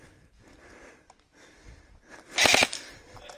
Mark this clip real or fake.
real